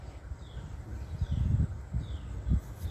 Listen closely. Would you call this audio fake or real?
real